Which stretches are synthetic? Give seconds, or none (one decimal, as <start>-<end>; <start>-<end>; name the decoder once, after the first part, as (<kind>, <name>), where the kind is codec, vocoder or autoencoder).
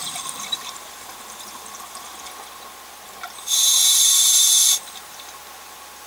0.0-0.7 (vocoder, BigVGAN v2); 3.9-5.3